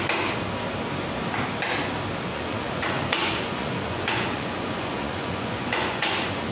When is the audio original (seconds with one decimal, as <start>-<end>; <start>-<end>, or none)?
0.0-2.3